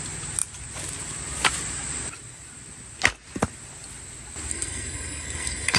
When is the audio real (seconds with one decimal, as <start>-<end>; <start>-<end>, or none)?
0.0-4.5